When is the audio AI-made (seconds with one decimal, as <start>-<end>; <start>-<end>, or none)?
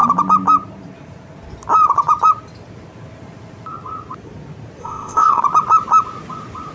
4.8-5.4